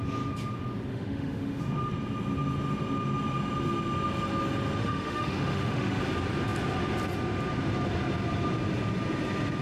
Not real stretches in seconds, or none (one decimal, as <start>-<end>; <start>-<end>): 0.9-1.6; 4.8-6.0